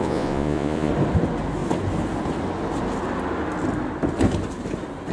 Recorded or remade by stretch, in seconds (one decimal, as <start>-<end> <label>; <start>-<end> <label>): 0.0-0.9 remade; 0.9-5.1 recorded